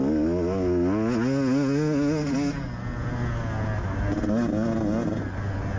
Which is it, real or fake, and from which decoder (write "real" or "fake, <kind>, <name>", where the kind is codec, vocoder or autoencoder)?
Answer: real